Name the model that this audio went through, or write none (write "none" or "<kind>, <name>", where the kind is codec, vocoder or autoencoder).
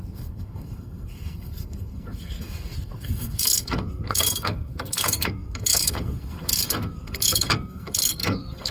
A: codec, SNAC